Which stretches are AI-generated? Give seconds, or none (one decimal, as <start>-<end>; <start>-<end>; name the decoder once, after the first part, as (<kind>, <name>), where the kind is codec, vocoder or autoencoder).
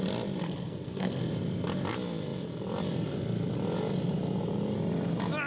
0.4-1.2 (codec, SNAC)